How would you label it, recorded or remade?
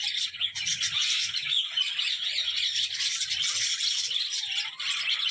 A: recorded